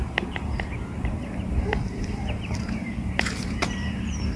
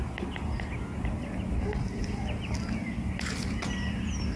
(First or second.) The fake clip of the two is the first